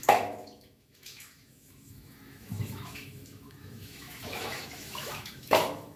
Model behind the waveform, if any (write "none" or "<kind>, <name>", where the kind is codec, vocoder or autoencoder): autoencoder, DAC-VAE